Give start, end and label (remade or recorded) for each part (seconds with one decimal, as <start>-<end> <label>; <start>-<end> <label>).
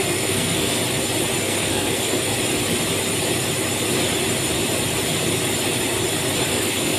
0.0-0.8 remade; 0.8-1.4 recorded; 1.4-2.3 remade; 2.3-6.5 recorded; 6.5-7.0 remade